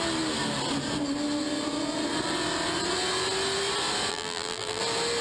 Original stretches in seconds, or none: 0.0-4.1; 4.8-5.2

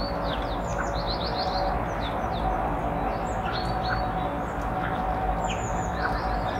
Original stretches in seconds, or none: 0.0-6.6

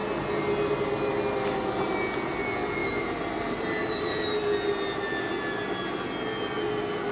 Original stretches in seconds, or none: 0.0-2.8; 4.4-7.1